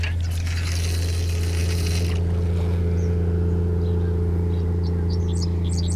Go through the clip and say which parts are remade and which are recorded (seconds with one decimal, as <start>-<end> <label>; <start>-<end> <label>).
0.0-1.6 recorded; 1.6-5.2 remade; 5.2-6.0 recorded